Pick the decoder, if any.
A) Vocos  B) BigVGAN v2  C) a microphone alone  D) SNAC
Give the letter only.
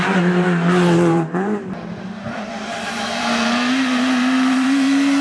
B